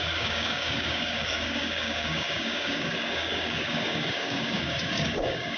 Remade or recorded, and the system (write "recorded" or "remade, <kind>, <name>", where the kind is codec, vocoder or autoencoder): remade, codec, DAC